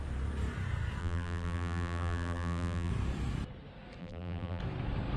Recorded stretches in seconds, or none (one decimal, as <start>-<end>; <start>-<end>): 0.0-1.0; 2.9-4.0; 4.6-5.2